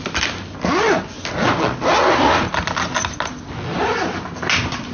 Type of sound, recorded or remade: recorded